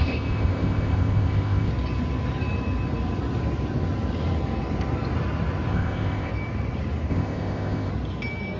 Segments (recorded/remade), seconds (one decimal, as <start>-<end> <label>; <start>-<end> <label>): 0.0-1.7 remade; 1.7-5.7 recorded; 5.7-6.3 remade; 6.3-7.1 recorded; 7.1-7.9 remade; 7.9-8.6 recorded